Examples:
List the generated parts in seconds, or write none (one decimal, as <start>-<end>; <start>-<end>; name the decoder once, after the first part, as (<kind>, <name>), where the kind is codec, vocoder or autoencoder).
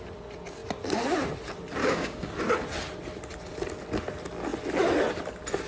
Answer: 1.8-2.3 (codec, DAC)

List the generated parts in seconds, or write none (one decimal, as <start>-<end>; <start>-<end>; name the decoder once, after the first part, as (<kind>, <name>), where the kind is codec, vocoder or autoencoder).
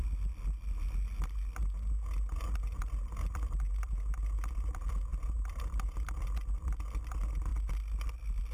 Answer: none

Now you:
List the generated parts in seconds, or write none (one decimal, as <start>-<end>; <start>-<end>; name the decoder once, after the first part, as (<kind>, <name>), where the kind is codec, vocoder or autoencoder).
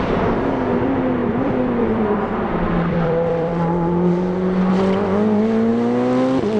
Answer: 1.2-4.7 (vocoder, BigVGAN v2)